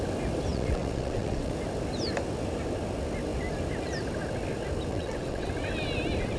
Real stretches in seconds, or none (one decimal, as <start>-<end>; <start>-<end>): 0.0-0.5; 1.5-4.9; 5.5-6.4

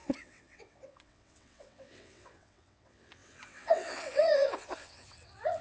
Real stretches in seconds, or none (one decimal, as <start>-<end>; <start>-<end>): none

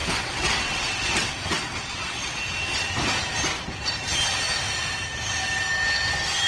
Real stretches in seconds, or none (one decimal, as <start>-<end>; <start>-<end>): 2.4-6.5

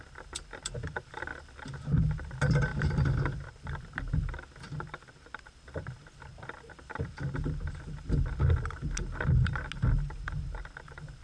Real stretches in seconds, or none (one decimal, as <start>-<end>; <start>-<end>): 0.0-11.2

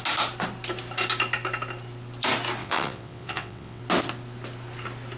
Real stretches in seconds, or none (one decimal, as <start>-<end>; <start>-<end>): 0.0-2.6; 3.8-5.2